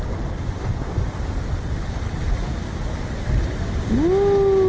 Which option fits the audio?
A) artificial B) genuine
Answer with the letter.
B